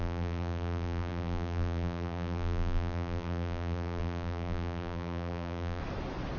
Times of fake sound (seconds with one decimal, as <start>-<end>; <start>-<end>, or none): 0.0-5.8